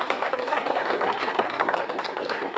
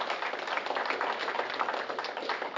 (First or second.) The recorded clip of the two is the second